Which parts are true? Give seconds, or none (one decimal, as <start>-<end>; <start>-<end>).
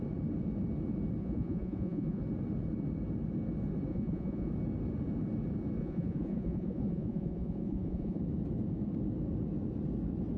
0.0-1.2; 2.2-3.9; 4.5-5.8; 8.2-10.4